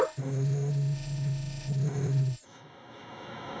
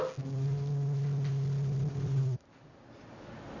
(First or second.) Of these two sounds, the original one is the second